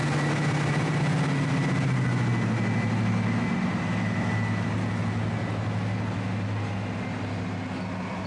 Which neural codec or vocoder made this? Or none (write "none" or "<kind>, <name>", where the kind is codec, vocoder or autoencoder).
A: none